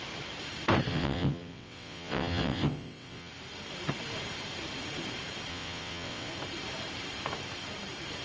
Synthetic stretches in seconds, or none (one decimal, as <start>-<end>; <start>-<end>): 0.9-3.3; 5.5-6.3